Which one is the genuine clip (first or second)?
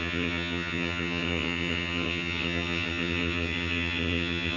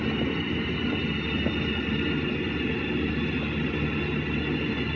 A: second